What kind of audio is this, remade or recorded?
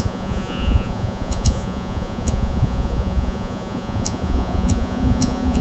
remade